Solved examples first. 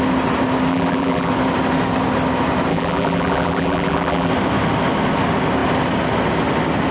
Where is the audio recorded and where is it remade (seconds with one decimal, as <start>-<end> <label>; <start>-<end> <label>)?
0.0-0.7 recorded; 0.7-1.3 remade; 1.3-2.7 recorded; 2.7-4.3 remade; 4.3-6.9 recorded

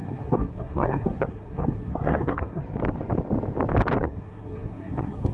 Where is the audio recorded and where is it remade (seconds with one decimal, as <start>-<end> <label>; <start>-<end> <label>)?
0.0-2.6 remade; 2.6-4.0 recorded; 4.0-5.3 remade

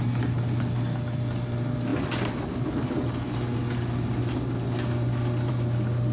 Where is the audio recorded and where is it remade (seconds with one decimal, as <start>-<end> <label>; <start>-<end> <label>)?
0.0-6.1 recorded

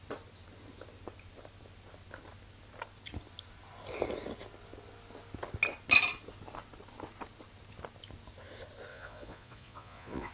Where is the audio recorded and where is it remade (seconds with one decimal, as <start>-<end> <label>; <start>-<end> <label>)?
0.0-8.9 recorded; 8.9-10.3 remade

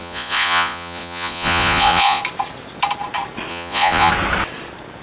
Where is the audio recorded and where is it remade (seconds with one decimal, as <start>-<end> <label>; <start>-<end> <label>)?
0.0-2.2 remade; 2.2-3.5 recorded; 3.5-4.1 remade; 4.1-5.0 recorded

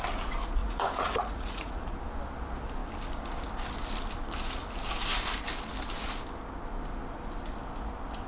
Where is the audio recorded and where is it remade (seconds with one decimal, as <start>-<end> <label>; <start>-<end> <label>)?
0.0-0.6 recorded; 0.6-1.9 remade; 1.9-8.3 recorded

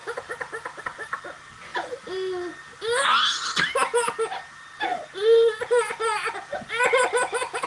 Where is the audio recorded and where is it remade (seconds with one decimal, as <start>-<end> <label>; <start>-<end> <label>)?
0.0-0.8 remade; 0.8-7.7 recorded

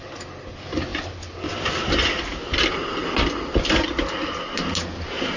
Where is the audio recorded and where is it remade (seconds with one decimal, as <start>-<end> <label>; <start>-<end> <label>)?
0.0-5.4 recorded